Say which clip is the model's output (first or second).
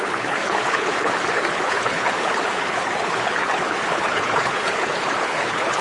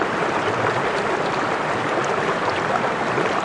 first